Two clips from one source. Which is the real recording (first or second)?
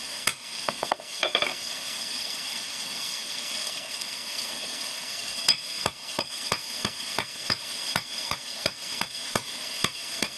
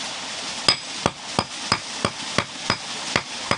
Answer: second